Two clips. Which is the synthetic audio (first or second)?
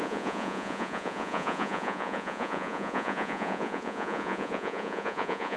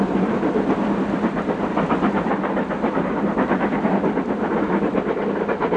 first